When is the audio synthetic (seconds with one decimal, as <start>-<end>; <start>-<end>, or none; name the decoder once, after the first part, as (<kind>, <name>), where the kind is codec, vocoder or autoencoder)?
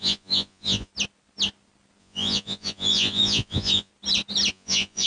0.0-0.9 (vocoder, Vocos); 2.0-3.9; 4.5-5.1